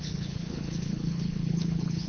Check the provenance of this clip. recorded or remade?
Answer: remade